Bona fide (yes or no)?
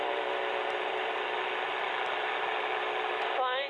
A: no